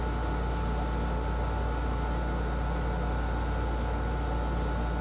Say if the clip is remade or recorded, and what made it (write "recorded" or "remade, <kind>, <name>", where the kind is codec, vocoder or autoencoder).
recorded